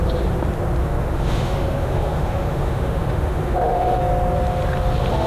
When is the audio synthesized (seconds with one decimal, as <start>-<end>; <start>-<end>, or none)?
0.8-4.0